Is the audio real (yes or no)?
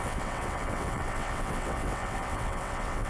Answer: no